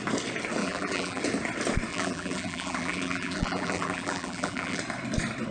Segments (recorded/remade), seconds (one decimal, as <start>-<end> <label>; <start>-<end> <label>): 0.0-0.6 recorded; 0.6-1.2 remade; 1.2-1.9 recorded; 1.9-4.8 remade; 4.8-5.5 recorded